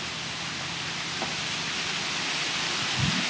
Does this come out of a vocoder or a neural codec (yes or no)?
no